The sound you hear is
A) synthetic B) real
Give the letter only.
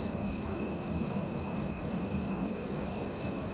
A